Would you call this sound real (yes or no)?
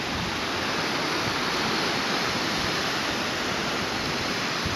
yes